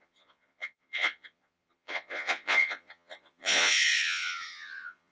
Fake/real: fake